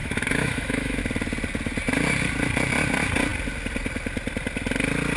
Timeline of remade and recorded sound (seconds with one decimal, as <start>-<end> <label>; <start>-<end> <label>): 0.0-1.0 remade; 1.0-5.2 recorded